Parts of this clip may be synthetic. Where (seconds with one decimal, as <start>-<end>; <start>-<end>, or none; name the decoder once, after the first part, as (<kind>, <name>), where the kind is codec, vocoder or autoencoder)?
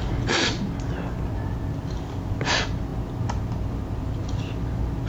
none